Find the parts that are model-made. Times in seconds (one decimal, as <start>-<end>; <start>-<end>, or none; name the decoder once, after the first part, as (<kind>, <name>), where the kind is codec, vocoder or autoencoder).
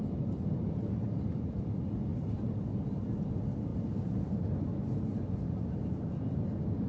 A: none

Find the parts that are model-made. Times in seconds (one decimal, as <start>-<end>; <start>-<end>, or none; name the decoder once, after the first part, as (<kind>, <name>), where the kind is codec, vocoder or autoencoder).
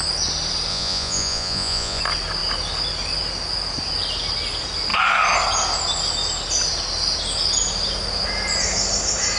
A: 0.7-2.0 (vocoder, Vocos)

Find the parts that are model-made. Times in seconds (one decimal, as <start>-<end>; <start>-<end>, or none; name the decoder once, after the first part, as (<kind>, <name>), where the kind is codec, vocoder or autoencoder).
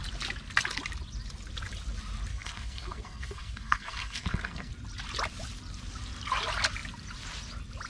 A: 2.3-4.7 (codec, SNAC)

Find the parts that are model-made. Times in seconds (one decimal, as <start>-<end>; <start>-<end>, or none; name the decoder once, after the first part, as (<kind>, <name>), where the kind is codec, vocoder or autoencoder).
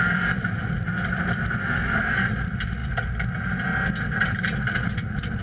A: 0.0-2.8 (vocoder, BigVGAN v2)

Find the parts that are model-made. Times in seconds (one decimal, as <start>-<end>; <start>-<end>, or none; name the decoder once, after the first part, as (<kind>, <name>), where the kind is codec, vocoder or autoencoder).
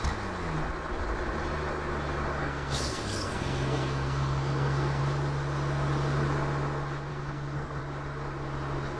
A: 2.4-5.0 (codec, SNAC); 7.1-7.8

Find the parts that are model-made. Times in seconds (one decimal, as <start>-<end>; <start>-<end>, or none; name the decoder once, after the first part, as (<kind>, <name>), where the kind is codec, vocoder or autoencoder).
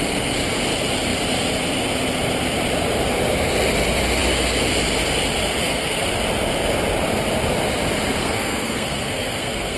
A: 5.6-6.1 (codec, SNAC); 8.2-9.8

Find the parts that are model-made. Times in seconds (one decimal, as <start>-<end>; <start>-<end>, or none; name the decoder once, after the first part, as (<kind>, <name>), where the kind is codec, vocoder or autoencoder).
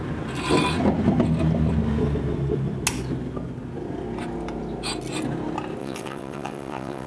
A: 5.8-7.1 (vocoder, WaveNeXt)